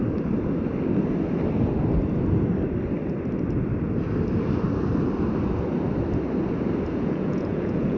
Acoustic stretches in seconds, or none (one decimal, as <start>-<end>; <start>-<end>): 0.0-6.9

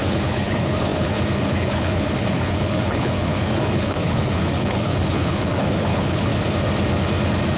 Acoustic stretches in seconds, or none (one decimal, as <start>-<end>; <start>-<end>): 6.3-7.6

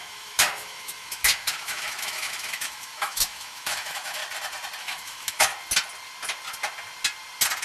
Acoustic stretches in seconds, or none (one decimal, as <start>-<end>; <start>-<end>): 4.2-4.8; 5.5-7.6

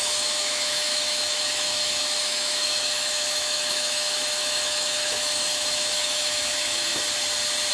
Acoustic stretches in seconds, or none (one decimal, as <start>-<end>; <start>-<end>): 6.9-7.7

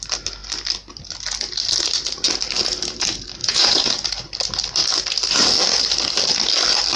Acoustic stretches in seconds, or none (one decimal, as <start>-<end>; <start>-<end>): 0.0-3.4; 3.9-7.0